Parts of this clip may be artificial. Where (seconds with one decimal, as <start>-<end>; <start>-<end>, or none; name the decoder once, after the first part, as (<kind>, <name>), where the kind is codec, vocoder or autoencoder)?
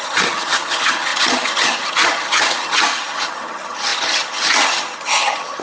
0.0-5.6 (vocoder, HiFi-GAN)